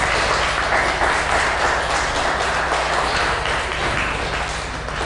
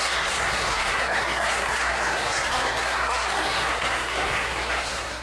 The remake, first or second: second